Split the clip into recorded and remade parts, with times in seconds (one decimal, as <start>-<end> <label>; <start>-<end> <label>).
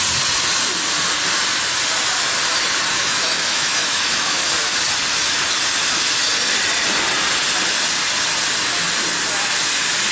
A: 0.0-3.0 recorded; 3.0-4.5 remade; 4.5-10.1 recorded